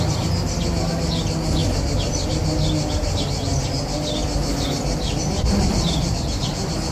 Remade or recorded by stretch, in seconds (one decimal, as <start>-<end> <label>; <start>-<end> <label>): 0.0-6.9 recorded